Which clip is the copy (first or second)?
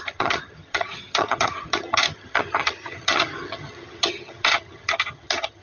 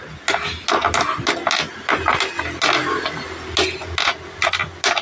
first